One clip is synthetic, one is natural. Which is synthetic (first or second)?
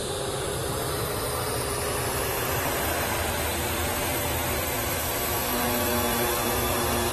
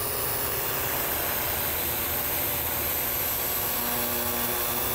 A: first